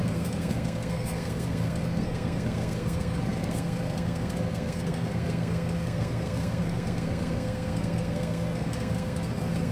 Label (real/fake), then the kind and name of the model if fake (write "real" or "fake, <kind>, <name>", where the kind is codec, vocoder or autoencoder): fake, codec, SNAC